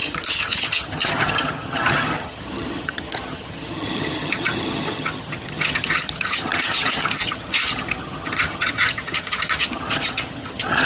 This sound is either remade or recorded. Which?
remade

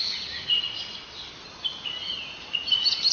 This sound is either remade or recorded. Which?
recorded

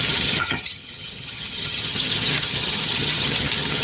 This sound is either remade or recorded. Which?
remade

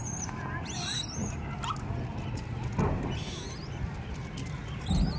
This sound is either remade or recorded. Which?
recorded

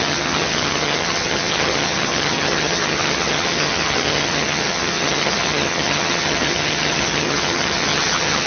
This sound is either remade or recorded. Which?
remade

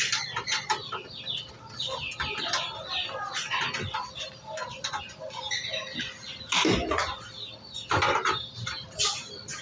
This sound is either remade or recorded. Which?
recorded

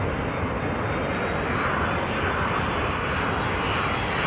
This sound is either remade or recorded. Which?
recorded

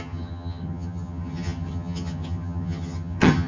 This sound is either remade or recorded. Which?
remade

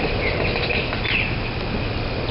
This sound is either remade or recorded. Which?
recorded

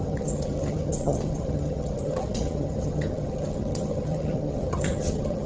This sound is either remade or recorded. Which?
remade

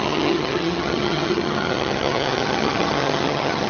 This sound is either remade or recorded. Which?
remade